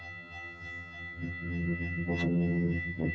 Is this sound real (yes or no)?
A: no